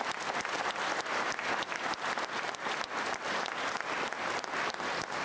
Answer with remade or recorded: recorded